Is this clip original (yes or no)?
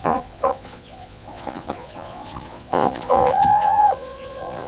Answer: no